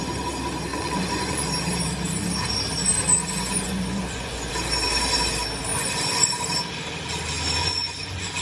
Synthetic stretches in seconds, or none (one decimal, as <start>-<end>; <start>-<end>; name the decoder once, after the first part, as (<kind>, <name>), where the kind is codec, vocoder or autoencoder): 0.7-1.5 (vocoder, Vocos); 3.2-4.5; 5.7-6.4; 7.6-8.4

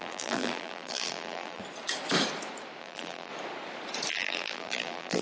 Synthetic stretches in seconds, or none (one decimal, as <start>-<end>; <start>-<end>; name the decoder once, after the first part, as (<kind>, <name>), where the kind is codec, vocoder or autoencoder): 0.0-1.6 (vocoder, BigVGAN v2); 2.8-3.3; 4.1-5.2